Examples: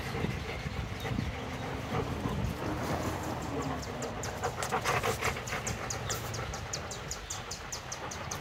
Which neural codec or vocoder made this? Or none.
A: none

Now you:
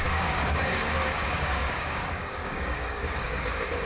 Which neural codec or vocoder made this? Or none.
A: codec, DAC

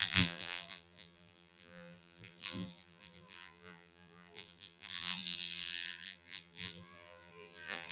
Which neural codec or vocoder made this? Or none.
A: vocoder, BigVGAN v2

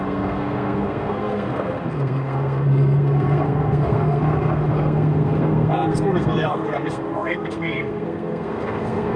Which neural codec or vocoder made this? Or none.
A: codec, SNAC